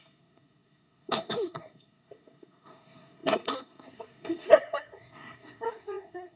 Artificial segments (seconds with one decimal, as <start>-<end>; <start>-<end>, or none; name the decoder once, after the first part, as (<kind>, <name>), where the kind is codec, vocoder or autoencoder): 0.0-6.4 (codec, SNAC)